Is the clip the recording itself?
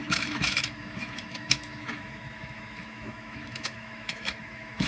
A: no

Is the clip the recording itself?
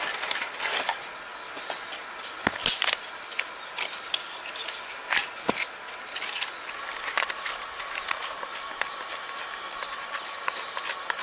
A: yes